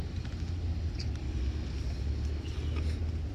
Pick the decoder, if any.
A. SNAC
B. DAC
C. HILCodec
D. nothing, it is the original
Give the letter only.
D